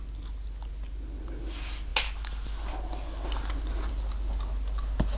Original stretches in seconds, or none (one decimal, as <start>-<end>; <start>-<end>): 0.0-5.2